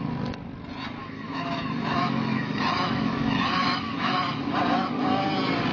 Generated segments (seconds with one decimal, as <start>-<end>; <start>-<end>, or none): 1.0-4.4

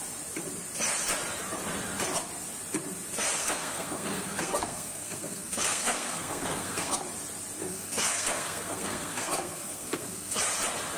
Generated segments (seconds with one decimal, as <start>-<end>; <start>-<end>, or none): 3.4-7.0; 7.6-10.4

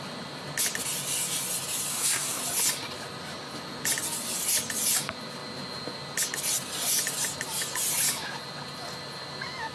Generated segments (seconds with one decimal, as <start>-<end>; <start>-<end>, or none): 1.9-2.4

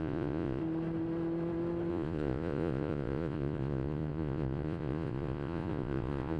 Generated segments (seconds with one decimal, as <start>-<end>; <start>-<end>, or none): 0.0-0.6; 1.9-6.4